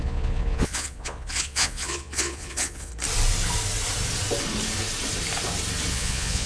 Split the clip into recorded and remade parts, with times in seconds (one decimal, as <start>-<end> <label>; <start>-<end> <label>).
0.0-2.9 remade; 2.9-5.9 recorded; 5.9-6.5 remade